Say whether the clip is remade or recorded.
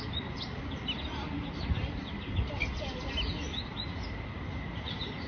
recorded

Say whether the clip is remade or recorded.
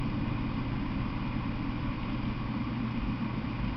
recorded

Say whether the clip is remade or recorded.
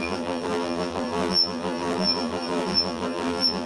remade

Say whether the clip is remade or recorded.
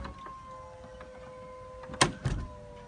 recorded